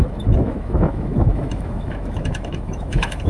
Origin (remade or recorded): remade